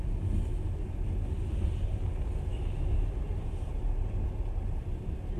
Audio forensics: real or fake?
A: real